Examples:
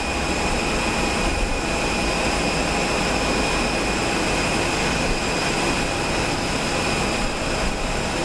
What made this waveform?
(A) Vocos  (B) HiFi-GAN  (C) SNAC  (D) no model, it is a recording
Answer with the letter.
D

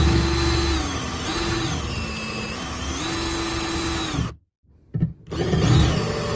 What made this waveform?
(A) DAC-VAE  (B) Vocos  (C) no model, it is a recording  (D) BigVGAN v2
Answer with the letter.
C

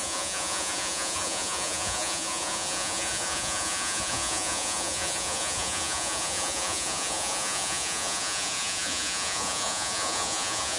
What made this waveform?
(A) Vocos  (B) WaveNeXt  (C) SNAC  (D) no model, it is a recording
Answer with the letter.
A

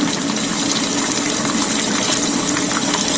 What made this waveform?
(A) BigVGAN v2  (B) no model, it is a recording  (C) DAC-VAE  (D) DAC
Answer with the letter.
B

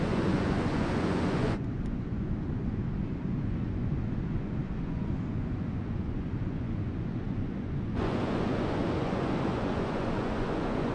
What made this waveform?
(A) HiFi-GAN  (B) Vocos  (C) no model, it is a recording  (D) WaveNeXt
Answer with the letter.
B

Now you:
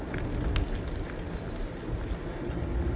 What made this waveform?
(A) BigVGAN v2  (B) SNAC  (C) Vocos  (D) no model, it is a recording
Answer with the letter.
D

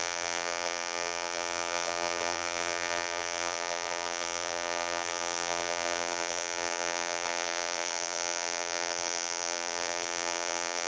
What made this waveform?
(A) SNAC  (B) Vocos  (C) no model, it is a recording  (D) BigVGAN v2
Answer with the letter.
D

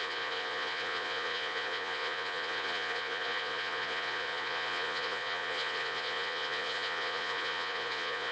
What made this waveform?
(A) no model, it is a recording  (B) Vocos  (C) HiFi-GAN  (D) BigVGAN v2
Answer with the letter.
B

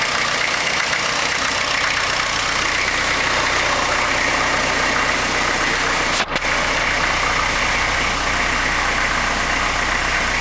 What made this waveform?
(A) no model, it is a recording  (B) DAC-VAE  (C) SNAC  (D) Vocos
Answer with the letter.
A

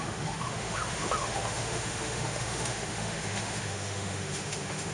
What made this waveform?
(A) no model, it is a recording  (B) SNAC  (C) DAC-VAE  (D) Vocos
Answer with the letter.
C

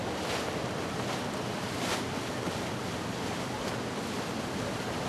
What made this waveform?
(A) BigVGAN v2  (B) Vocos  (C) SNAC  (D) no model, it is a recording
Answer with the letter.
D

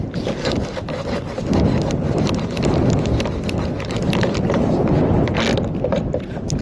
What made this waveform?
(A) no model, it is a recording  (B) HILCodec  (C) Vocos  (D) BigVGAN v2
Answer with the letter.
A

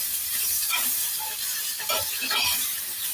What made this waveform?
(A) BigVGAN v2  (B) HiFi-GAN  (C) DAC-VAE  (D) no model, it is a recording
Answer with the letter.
A